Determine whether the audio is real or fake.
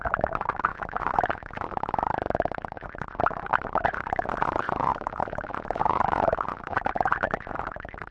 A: fake